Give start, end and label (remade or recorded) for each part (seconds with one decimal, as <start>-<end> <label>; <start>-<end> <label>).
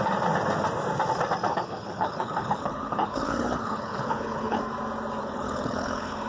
0.0-1.5 recorded; 1.5-4.6 remade; 4.6-5.2 recorded; 5.2-6.3 remade